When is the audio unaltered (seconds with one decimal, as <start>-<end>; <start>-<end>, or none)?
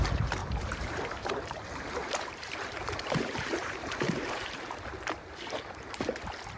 0.0-0.4; 1.6-2.0; 6.0-6.6